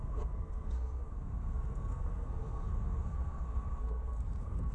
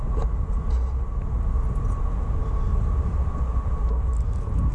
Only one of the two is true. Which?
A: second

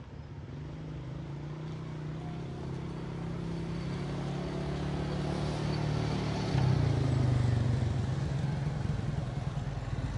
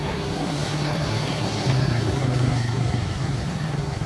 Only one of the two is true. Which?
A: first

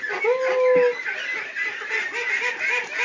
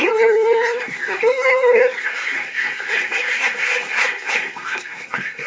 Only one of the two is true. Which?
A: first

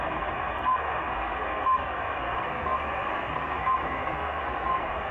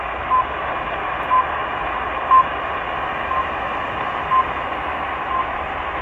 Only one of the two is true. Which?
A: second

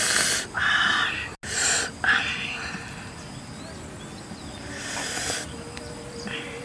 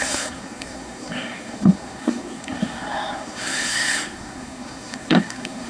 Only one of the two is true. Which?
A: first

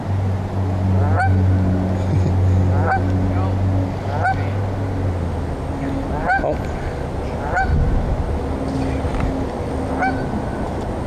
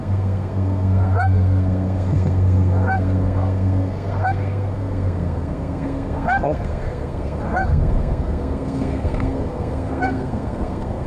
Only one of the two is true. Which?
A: first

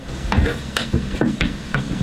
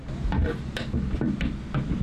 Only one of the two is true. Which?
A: second